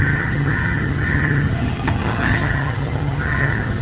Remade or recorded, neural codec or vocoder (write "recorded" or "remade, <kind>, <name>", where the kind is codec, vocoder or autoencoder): remade, vocoder, HiFi-GAN